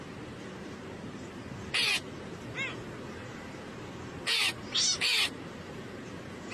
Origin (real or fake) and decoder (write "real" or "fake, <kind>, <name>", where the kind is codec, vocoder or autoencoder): real